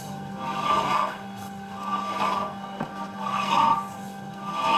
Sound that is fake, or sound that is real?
fake